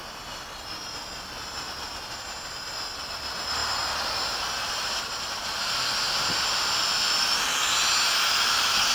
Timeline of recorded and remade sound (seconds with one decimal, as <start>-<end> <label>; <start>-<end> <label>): 0.0-8.9 recorded